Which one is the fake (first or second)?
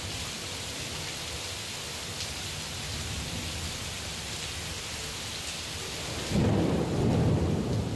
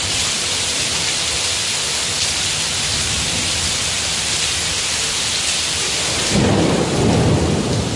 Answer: second